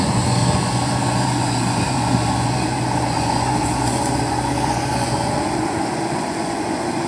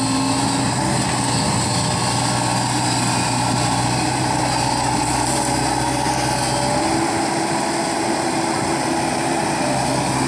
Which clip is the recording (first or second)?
second